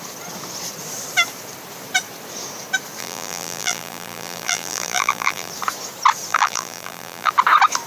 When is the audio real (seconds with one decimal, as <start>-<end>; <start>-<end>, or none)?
0.0-3.0; 5.5-6.3; 7.3-7.9